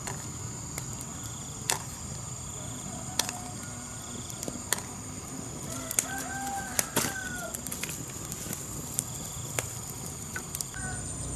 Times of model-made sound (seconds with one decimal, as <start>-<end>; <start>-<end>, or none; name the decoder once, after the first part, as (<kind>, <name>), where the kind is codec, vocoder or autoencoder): none